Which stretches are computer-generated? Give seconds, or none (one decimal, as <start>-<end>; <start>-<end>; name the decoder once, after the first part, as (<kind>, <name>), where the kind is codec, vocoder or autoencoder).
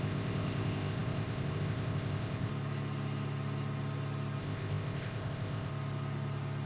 0.0-2.5 (codec, ZipCodec); 4.4-5.7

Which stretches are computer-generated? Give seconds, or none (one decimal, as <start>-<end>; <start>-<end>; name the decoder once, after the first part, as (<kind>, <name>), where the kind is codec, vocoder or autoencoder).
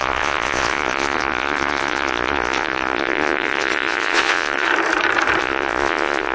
0.0-4.7 (vocoder, Vocos); 5.4-6.3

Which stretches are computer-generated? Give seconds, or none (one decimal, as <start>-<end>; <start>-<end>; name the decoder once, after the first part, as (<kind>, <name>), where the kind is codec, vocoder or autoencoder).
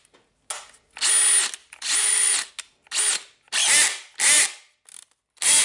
1.6-2.5 (vocoder, BigVGAN v2)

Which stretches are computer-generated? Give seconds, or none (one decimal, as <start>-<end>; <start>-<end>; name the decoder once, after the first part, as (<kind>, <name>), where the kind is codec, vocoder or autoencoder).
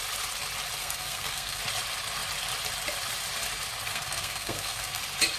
0.8-1.6 (codec, SNAC); 3.9-5.0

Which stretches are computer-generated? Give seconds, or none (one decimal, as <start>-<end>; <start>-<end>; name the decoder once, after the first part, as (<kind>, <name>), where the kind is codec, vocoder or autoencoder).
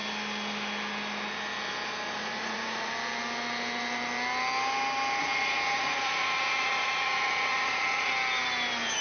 2.2-2.9 (vocoder, Vocos); 5.2-8.1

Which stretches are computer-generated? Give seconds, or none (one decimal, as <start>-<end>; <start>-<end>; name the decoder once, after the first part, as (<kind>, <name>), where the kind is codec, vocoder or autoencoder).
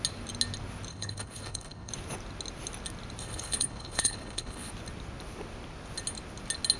0.9-1.9 (codec, HILCodec); 3.2-4.7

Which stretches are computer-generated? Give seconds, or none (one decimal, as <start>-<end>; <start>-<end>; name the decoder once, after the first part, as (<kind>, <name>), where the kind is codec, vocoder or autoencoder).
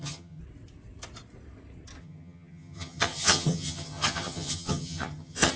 0.0-0.4 (vocoder, HiFi-GAN); 2.0-5.6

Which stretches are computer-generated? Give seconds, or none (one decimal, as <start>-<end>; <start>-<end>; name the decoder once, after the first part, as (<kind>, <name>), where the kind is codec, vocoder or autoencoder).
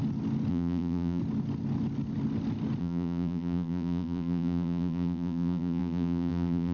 0.5-1.2 (vocoder, BigVGAN v2); 2.8-6.7